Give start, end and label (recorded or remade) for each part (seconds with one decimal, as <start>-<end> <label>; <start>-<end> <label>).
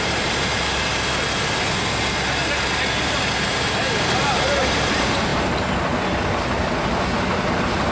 0.0-0.9 remade; 0.9-3.5 recorded; 3.5-5.3 remade; 5.3-7.3 recorded; 7.3-7.9 remade